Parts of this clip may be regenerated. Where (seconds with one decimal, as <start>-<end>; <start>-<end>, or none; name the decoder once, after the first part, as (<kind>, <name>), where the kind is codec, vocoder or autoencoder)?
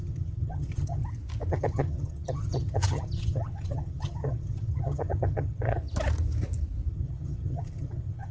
0.0-1.0 (vocoder, HiFi-GAN); 1.5-5.8; 6.9-8.3